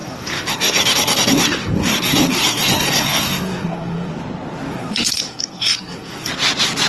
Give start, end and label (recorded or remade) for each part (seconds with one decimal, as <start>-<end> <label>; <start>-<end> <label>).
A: 0.0-4.1 remade; 4.1-4.7 recorded; 4.7-6.3 remade; 6.3-6.9 recorded